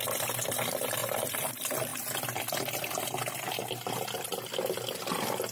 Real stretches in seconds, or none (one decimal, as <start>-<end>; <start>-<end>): 0.0-1.0; 1.5-5.5